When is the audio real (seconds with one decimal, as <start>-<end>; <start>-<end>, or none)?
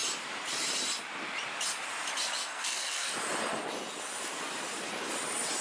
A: 0.0-2.4; 3.1-5.6